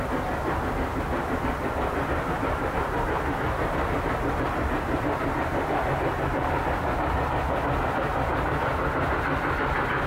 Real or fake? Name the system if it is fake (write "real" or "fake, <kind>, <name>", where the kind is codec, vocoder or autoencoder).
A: real